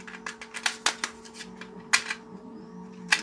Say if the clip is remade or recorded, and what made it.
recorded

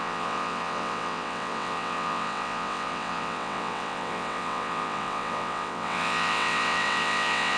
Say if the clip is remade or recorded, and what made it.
remade, vocoder, WaveNeXt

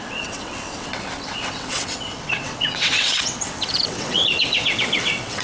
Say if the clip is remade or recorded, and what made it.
remade, vocoder, WaveNeXt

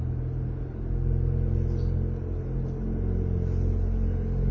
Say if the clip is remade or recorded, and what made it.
recorded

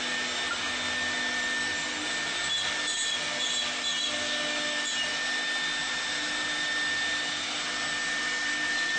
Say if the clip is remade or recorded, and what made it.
recorded